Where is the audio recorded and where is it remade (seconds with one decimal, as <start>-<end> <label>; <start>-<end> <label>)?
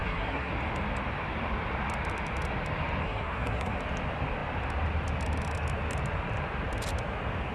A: 0.0-0.5 remade; 0.5-3.0 recorded; 3.0-3.8 remade; 3.8-7.5 recorded